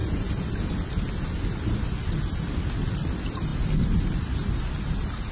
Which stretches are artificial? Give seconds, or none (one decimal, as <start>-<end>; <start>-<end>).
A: none